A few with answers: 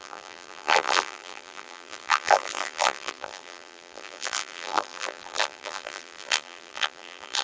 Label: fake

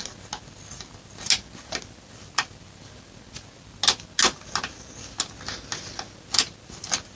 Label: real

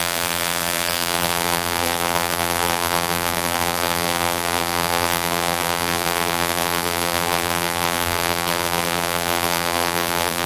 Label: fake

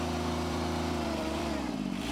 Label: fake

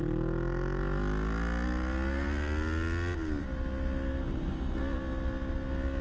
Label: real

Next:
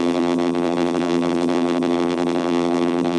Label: fake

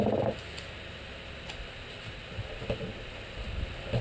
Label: real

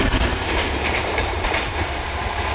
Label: fake